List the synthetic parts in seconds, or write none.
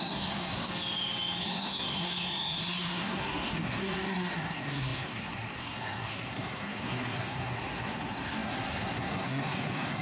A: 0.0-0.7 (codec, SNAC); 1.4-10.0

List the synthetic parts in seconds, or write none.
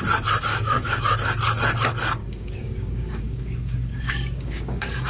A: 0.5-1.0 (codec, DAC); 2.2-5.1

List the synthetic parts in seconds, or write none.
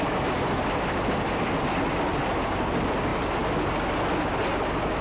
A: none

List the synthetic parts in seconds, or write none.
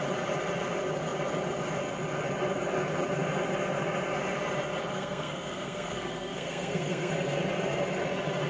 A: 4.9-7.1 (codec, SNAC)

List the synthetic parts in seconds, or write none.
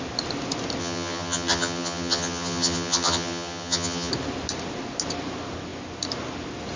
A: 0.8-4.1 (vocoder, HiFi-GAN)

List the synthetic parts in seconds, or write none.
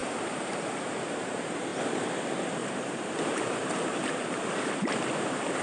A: 0.0-0.6 (vocoder, BigVGAN v2); 2.6-5.6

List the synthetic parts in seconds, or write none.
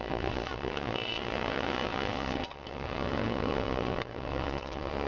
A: 0.0-5.1 (vocoder, WaveNeXt)